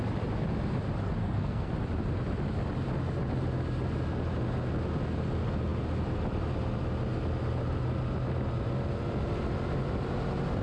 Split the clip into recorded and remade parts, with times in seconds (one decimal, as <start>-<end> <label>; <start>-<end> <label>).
0.0-1.2 recorded; 1.2-1.7 remade; 1.7-10.6 recorded

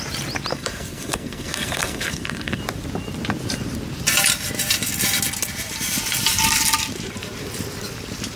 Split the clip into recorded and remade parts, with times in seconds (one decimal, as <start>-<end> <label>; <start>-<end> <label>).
0.0-0.5 recorded; 0.5-2.6 remade; 2.6-8.4 recorded

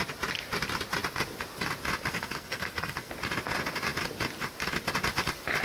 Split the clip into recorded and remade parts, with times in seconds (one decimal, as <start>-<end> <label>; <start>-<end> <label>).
0.0-2.1 recorded; 2.1-3.1 remade; 3.1-5.6 recorded

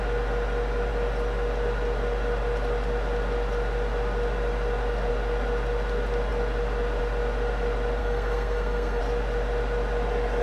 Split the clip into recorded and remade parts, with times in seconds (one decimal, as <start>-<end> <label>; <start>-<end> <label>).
0.0-8.0 recorded; 8.0-9.0 remade; 9.0-10.4 recorded

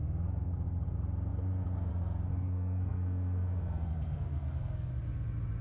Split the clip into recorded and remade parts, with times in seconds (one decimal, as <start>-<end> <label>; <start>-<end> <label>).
0.0-2.3 recorded; 2.3-4.9 remade; 4.9-5.6 recorded

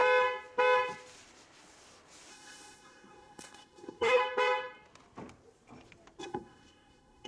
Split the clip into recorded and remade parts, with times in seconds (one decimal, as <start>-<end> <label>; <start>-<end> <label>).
0.0-2.3 recorded; 2.3-4.2 remade; 4.2-6.2 recorded; 6.2-7.3 remade

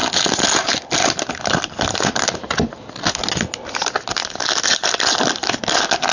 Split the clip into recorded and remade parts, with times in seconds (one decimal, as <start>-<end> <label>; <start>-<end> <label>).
0.0-6.1 recorded